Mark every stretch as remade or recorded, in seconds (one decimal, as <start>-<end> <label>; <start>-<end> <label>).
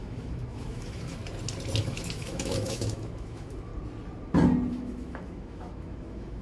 0.0-1.2 remade; 1.2-1.8 recorded; 1.8-3.7 remade; 3.7-4.7 recorded; 4.7-6.4 remade